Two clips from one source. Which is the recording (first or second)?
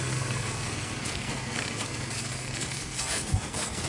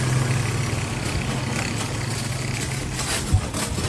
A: second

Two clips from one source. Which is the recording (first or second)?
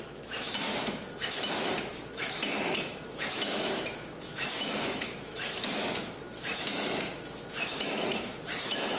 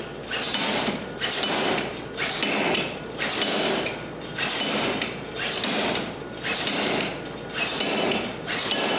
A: second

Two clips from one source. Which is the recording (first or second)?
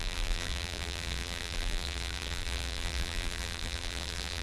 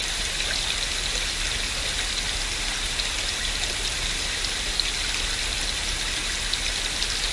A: second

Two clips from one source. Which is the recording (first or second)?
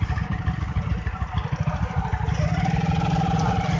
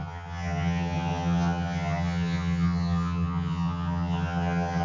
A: first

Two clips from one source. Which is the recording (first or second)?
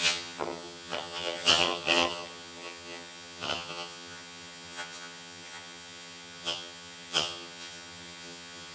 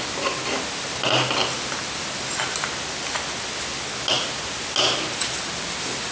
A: second